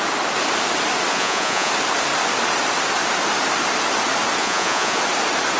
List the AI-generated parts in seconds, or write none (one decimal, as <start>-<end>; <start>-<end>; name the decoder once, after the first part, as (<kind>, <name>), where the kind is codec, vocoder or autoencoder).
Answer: 1.1-1.7 (vocoder, Vocos); 4.4-5.0